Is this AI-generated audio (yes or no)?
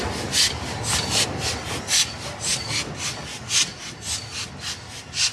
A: no